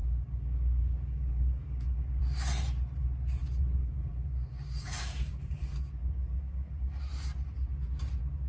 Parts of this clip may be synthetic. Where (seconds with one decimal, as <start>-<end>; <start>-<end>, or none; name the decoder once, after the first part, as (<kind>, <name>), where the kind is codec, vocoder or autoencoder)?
0.0-2.2 (codec, DAC); 3.8-7.0